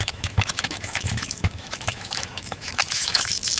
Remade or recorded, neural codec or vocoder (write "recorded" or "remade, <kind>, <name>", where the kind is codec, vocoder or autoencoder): remade, autoencoder, DAC-VAE